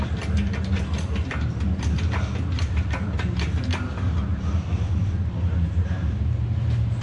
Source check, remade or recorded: recorded